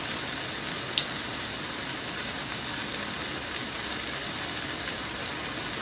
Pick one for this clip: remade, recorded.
recorded